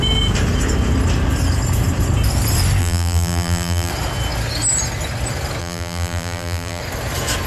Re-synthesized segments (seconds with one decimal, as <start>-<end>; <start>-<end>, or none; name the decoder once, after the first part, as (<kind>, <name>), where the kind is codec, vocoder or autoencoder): 2.8-3.9 (vocoder, BigVGAN v2); 5.6-6.8